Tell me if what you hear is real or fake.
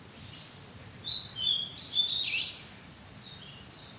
fake